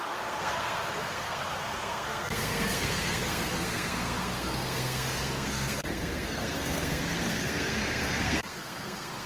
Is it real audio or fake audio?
fake